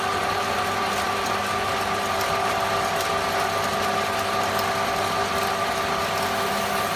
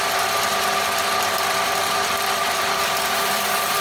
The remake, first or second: second